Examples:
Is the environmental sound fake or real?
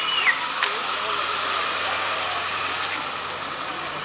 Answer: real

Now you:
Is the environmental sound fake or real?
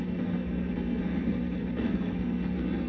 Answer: fake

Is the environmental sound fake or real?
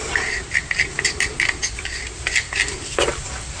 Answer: real